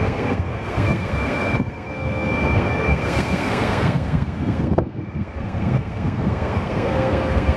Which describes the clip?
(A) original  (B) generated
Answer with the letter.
B